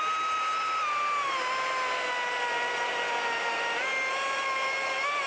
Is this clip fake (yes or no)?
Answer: no